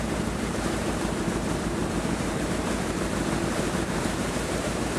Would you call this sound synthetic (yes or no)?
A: yes